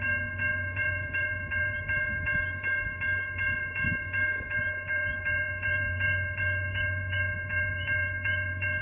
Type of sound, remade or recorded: remade